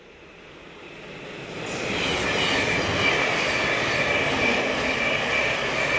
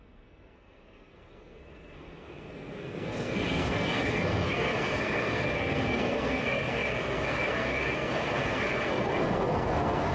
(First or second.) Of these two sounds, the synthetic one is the second